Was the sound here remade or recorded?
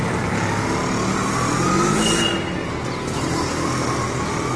recorded